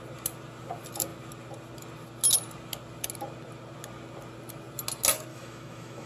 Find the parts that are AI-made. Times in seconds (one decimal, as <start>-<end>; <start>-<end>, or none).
5.3-6.1